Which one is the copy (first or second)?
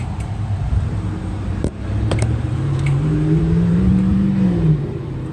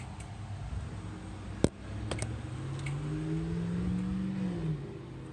first